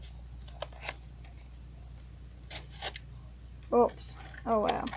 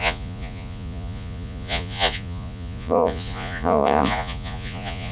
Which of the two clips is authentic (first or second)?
first